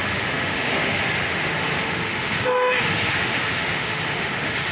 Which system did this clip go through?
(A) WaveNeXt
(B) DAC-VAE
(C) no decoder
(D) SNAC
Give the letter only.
B